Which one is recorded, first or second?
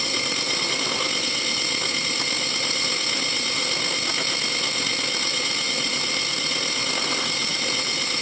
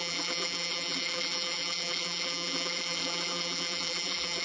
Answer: first